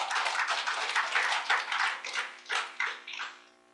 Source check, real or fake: real